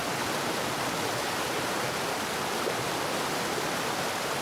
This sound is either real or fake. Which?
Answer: real